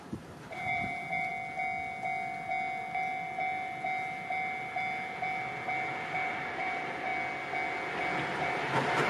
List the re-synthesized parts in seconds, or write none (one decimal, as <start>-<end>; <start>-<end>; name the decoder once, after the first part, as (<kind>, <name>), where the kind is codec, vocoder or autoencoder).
0.0-1.3 (vocoder, BigVGAN v2); 6.3-7.1; 8.2-9.1